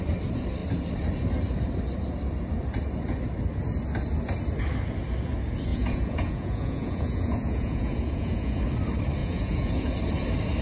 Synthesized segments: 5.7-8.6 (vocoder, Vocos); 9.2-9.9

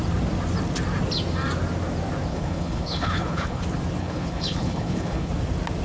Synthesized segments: 2.3-3.6 (codec, HILCodec); 4.0-5.3

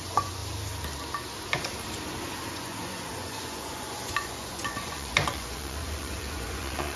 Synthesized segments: 0.0-0.4 (vocoder, Vocos); 2.4-7.0

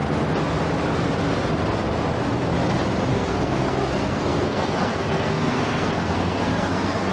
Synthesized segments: 3.1-7.1 (codec, SNAC)

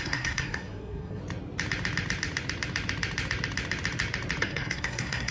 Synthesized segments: 0.0-1.2 (codec, SNAC); 4.4-5.3

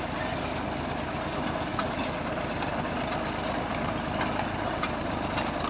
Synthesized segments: none